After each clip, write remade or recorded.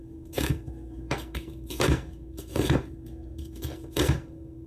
remade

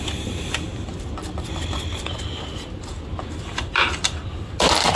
recorded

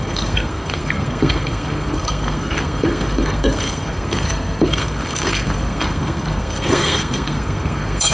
remade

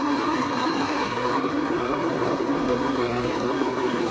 remade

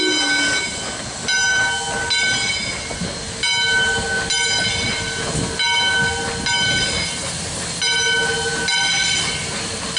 recorded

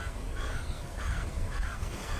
remade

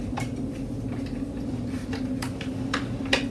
recorded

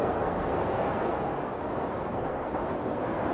remade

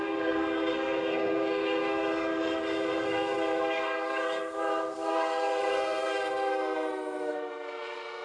remade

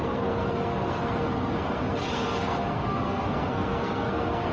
remade